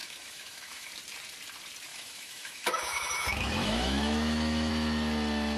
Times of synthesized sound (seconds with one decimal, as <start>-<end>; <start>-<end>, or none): 0.0-0.9; 1.9-4.7